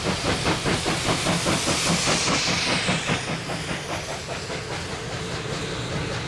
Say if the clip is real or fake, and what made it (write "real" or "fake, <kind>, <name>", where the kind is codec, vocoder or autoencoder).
real